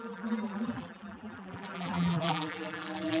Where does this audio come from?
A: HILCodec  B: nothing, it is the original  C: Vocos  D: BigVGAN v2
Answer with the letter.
D